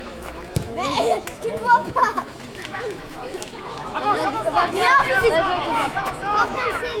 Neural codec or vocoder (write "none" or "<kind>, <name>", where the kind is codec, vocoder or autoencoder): autoencoder, DAC-VAE